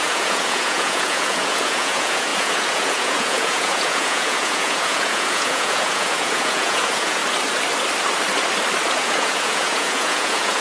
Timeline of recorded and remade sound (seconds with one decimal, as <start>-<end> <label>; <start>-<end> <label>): 0.0-7.2 remade; 7.2-8.9 recorded; 8.9-10.6 remade